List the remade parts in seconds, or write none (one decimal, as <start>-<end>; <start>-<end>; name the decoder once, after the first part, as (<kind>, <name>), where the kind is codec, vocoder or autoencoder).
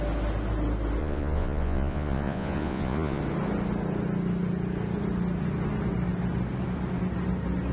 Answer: 1.0-3.2 (vocoder, Vocos)